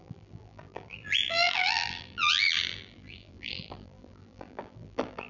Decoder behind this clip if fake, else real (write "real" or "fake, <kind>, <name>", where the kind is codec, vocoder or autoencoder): fake, vocoder, BigVGAN v2